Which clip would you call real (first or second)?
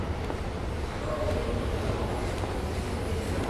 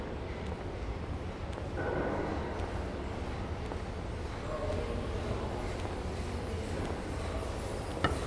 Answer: second